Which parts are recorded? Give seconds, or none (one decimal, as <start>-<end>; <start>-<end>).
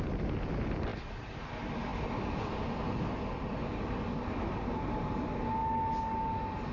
0.0-0.9; 1.5-6.7